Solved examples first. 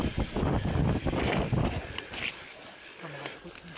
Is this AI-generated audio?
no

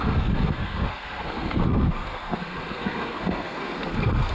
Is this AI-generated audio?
yes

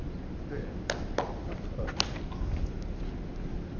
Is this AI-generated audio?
no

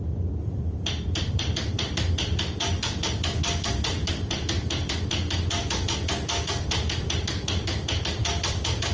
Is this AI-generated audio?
no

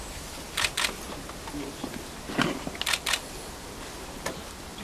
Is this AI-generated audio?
no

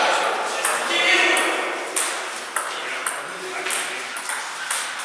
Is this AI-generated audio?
no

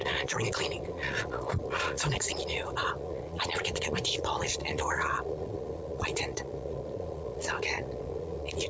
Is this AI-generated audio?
yes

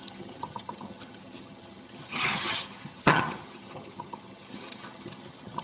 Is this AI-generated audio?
yes